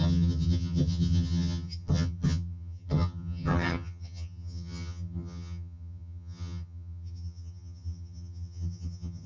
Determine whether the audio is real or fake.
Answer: fake